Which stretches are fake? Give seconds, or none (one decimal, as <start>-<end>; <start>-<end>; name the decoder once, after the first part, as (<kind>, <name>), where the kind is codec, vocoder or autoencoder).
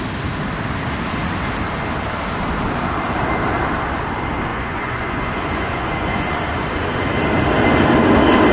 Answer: 4.5-7.0 (vocoder, Vocos)